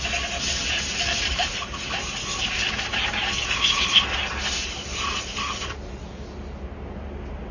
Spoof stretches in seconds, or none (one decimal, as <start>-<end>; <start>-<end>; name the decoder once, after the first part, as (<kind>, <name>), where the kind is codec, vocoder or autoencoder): 0.6-1.4 (vocoder, BigVGAN v2)